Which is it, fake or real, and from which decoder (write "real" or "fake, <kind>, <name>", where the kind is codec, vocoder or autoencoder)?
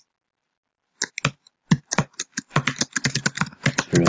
real